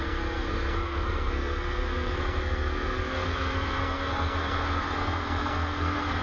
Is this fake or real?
fake